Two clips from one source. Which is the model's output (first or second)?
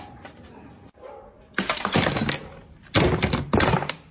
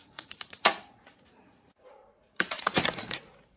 second